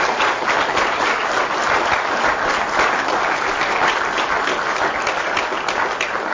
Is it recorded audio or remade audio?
recorded